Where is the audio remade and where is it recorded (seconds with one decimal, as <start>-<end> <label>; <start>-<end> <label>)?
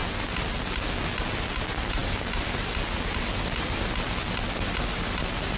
0.0-5.6 recorded